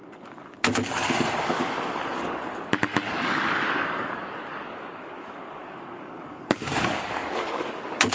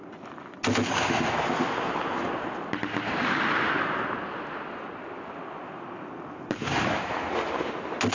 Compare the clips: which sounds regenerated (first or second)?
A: first